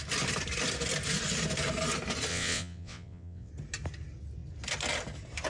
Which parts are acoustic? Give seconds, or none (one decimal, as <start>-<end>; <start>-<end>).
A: 0.0-2.3; 3.5-5.5